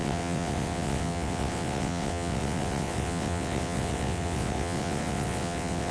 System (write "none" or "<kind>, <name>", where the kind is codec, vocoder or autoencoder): vocoder, WaveNeXt